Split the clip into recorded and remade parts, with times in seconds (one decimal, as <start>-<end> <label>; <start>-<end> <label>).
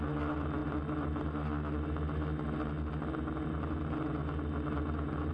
0.0-5.3 recorded